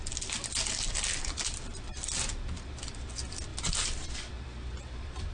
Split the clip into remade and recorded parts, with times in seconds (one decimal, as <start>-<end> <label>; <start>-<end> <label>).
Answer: 0.0-5.3 recorded